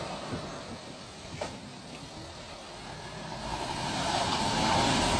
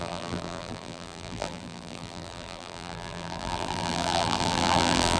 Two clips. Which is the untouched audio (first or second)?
first